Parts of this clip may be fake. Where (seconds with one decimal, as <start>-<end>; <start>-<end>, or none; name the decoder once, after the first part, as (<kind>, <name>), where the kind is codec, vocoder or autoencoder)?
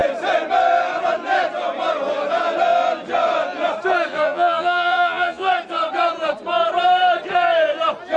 4.1-5.5 (vocoder, Vocos)